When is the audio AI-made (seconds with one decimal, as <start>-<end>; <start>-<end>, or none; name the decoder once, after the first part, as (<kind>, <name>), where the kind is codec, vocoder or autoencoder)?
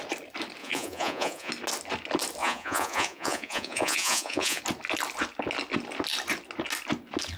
0.6-1.5 (vocoder, Vocos); 2.4-4.6